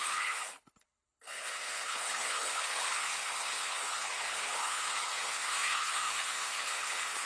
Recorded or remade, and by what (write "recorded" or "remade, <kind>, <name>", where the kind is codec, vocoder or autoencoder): remade, codec, HILCodec